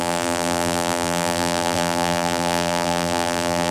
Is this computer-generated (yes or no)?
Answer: yes